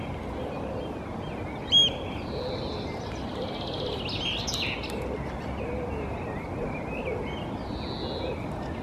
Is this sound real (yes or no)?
yes